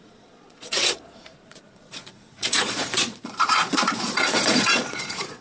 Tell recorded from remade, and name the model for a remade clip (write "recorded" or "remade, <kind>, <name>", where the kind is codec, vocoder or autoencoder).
remade, vocoder, Vocos